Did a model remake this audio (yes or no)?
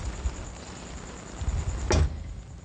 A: no